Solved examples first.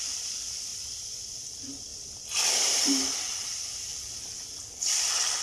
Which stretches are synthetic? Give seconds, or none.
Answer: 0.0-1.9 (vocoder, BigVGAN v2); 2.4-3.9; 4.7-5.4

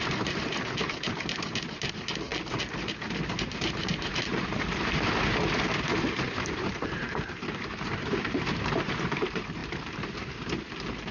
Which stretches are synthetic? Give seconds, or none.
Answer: 0.0-2.3 (vocoder, BigVGAN v2); 3.3-9.6; 10.7-11.1

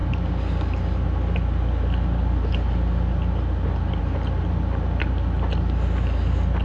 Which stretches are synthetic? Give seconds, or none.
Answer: none

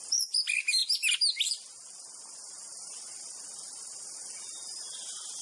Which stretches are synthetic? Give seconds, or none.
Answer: none

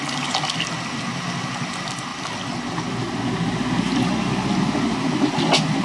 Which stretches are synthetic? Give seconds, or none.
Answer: none

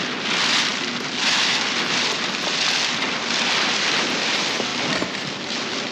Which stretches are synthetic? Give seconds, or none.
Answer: none

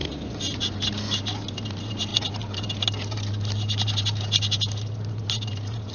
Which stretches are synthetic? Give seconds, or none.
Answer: none

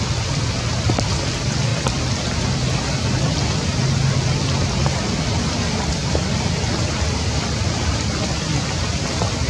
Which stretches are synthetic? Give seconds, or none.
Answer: 6.0-9.0 (vocoder, BigVGAN v2)